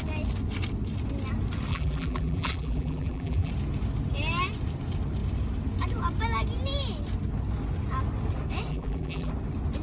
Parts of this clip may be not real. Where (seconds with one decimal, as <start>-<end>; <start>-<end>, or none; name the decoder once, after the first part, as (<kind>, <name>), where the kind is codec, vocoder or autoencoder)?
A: 1.7-3.5 (vocoder, BigVGAN v2); 8.7-9.3